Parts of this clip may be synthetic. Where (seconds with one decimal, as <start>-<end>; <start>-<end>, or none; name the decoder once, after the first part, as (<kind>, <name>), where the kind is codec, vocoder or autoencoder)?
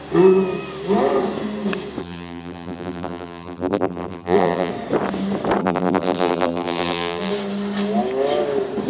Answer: 2.0-4.7 (vocoder, BigVGAN v2); 5.6-7.3